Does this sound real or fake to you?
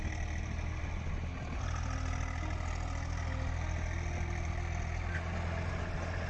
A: real